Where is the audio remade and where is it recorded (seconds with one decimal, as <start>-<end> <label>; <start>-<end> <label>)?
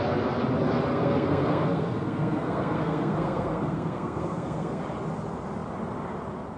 0.0-0.9 recorded; 0.9-4.8 remade; 4.8-6.6 recorded